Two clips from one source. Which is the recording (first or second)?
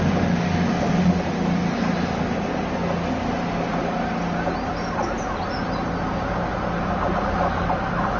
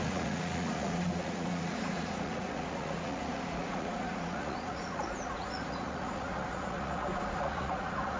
first